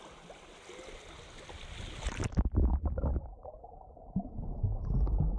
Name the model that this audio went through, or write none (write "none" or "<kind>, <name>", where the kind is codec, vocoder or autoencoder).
none